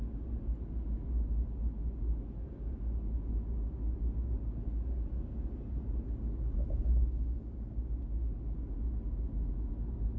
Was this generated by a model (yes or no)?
no